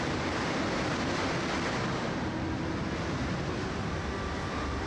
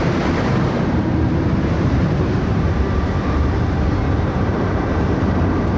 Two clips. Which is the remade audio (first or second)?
second